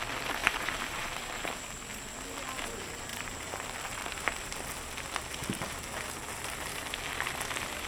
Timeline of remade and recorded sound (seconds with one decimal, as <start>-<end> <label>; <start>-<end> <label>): 0.0-0.4 recorded; 0.4-1.5 remade; 1.5-3.1 recorded; 3.1-4.7 remade; 4.7-7.9 recorded